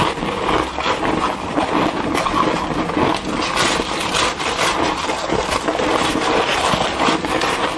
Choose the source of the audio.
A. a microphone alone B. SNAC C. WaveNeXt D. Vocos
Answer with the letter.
A